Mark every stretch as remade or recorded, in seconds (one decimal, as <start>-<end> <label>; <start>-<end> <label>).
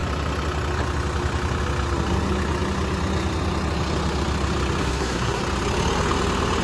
0.0-4.8 recorded; 4.8-5.4 remade; 5.4-6.6 recorded